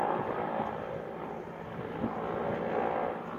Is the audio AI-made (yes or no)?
no